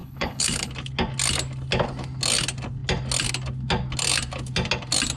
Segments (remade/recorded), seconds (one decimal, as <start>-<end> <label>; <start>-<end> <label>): 0.0-0.7 remade; 0.7-5.2 recorded